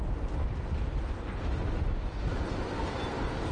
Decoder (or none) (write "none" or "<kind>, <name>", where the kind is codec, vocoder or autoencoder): none